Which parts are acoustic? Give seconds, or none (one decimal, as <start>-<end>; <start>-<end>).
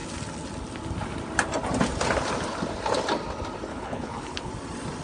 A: 0.0-3.7; 4.5-5.0